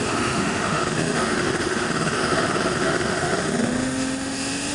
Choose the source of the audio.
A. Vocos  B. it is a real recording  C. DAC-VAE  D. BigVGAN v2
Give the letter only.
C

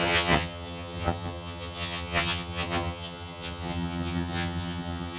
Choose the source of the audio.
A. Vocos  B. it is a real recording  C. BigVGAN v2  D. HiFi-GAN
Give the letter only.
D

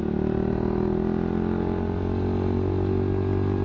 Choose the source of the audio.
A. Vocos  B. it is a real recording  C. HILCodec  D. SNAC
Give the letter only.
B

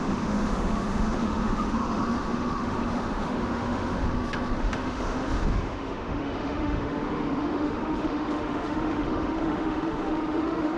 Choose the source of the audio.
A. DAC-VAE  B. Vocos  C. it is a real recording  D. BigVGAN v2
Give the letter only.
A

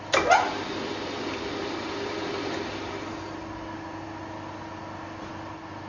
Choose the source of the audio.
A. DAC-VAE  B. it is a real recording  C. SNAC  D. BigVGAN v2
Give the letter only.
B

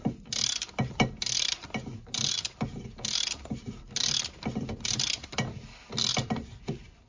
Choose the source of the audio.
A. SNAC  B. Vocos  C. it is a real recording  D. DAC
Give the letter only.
C